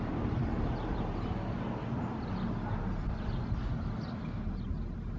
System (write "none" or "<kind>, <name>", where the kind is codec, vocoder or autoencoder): none